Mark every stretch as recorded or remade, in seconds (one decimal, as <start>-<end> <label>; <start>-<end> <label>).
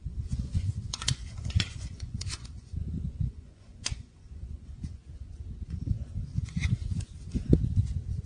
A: 0.0-5.0 remade; 5.0-5.7 recorded; 5.7-7.6 remade; 7.6-8.3 recorded